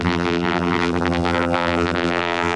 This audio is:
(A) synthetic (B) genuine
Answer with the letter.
A